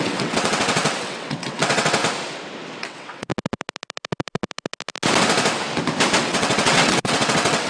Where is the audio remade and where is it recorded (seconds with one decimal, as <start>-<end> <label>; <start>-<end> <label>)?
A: 0.0-2.0 remade; 2.0-2.8 recorded; 2.8-3.3 remade; 3.3-6.2 recorded; 6.2-7.7 remade